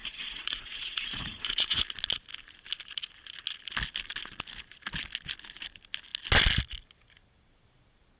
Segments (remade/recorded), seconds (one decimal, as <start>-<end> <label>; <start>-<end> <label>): 0.0-1.8 remade; 1.8-8.2 recorded